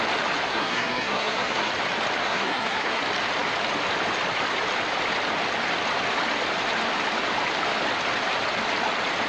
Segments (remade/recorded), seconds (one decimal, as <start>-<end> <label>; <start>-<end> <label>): 0.0-0.5 recorded; 0.5-1.7 remade; 1.7-2.2 recorded; 2.2-3.0 remade; 3.0-9.3 recorded